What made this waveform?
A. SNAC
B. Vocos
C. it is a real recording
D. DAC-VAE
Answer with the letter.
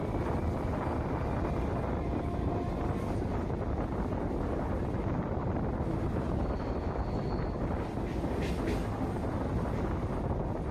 C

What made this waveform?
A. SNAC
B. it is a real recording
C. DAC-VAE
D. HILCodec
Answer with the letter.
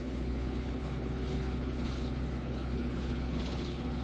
D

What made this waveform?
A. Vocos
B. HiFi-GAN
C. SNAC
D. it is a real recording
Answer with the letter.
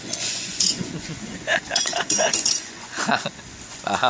A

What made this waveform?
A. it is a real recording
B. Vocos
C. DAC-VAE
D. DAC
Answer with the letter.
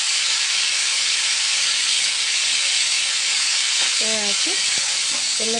D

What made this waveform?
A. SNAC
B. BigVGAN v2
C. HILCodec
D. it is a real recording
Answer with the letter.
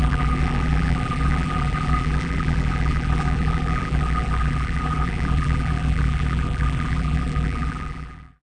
B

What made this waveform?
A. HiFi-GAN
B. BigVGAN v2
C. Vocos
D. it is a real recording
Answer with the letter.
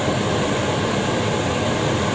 D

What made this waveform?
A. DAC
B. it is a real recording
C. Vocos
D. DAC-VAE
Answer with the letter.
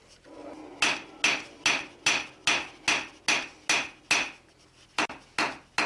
B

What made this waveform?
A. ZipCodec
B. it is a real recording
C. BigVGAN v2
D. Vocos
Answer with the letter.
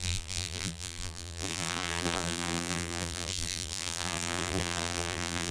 C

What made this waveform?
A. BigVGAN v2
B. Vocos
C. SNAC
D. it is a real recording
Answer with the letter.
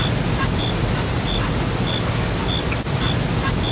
D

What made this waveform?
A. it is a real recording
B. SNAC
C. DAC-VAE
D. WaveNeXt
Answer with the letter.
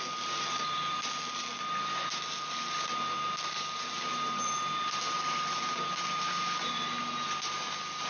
A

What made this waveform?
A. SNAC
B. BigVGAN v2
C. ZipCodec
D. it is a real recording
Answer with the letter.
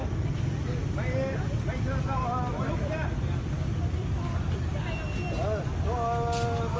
D